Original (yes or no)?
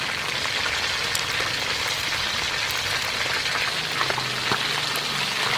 yes